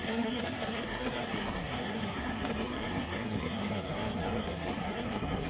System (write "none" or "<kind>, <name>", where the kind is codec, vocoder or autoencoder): codec, SNAC